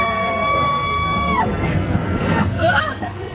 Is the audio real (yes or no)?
no